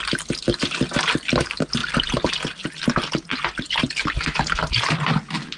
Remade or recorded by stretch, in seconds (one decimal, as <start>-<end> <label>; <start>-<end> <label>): 0.0-5.6 recorded